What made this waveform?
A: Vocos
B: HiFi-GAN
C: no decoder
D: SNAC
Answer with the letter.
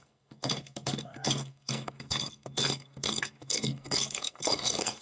D